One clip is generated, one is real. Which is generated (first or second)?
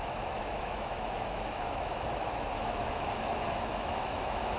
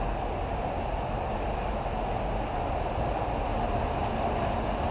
first